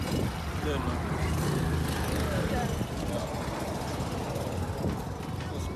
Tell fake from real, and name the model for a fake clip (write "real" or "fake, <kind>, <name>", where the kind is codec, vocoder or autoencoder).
real